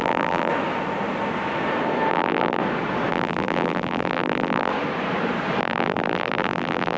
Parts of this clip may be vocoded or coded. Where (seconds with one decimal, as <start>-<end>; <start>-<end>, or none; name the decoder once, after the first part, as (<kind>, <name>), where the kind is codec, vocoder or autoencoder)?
0.0-0.5 (vocoder, BigVGAN v2); 2.1-2.6; 3.1-4.7; 5.6-7.0

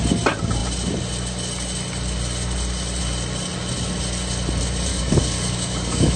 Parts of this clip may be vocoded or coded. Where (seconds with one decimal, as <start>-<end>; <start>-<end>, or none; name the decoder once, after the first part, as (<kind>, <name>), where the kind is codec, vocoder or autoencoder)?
4.9-6.2 (codec, DAC)